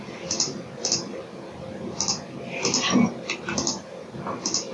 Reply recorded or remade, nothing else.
recorded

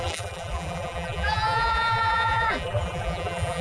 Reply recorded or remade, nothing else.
remade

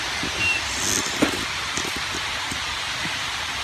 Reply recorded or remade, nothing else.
recorded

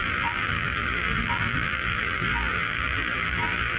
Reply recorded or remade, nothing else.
remade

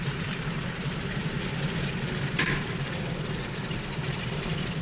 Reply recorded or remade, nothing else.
remade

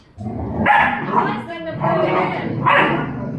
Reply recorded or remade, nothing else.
remade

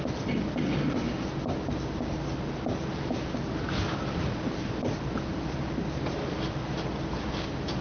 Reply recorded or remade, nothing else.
remade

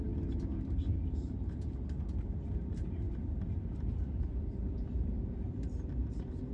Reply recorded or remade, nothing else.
remade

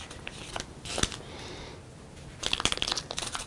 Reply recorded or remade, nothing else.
recorded